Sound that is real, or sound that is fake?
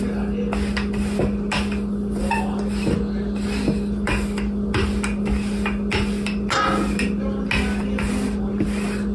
real